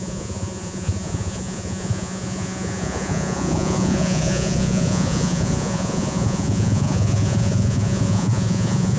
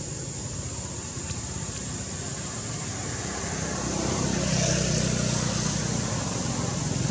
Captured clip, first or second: second